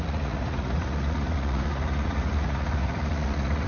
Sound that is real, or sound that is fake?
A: fake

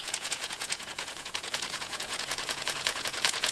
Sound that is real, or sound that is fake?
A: fake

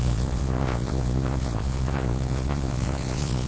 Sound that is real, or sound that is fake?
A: fake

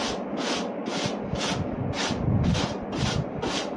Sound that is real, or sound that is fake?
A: real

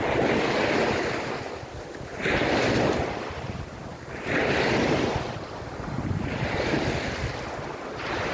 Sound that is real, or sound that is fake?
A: real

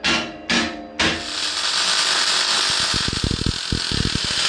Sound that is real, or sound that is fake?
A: real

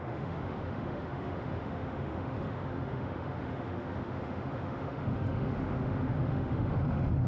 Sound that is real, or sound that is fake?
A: fake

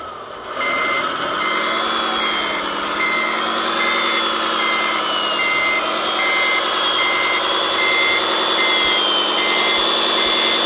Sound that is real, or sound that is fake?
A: real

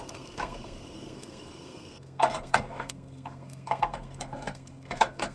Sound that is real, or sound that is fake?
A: fake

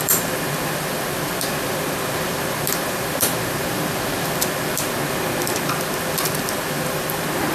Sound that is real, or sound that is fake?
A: fake